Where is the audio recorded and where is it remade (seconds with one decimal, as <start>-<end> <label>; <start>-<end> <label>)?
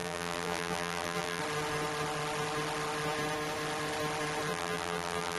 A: 0.0-1.4 remade; 1.4-4.5 recorded; 4.5-5.4 remade